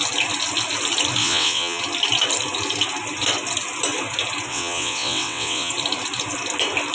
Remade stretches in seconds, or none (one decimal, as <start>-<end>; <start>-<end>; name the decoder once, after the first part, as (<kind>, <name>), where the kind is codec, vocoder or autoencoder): 1.2-1.8 (vocoder, WaveNeXt); 4.5-5.7